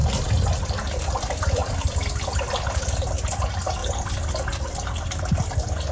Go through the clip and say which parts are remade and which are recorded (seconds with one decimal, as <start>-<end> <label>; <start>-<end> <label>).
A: 0.0-3.8 recorded; 3.8-5.2 remade; 5.2-5.9 recorded